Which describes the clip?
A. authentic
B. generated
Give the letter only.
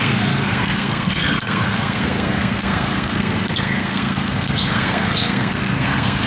B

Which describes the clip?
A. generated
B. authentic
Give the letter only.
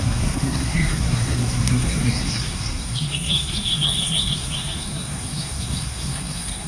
A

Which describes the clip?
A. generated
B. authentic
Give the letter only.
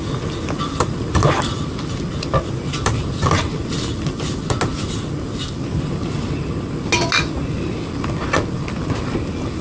B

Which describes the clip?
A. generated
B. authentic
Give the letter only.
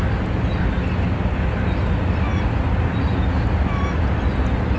B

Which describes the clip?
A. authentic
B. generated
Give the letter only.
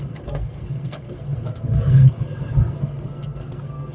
B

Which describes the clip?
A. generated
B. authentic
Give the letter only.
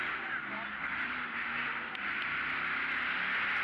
B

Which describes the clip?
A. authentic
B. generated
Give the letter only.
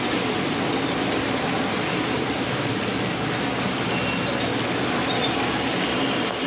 A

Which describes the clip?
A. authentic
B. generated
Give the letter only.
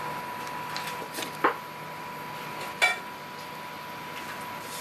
A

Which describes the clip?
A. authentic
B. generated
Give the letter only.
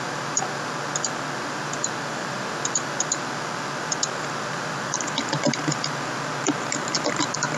A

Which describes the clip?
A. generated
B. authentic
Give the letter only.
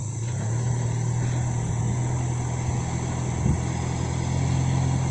B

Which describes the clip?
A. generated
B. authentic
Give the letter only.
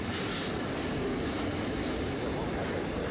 B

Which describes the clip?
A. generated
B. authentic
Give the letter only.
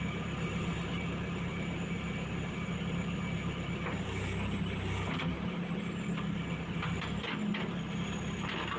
B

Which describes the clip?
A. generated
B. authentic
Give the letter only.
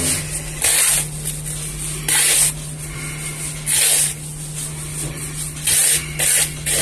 B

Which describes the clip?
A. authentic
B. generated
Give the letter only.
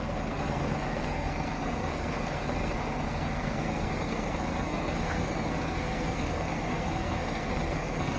B